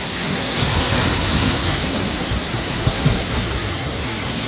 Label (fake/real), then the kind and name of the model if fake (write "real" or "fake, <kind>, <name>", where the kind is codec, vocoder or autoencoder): fake, codec, SNAC